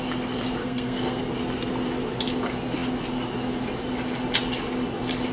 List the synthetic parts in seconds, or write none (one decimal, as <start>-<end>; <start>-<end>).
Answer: 0.6-1.2